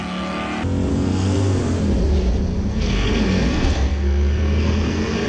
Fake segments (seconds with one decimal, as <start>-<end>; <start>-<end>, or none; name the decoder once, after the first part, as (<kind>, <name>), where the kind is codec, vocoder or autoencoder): 0.9-1.6 (codec, SNAC); 2.7-5.3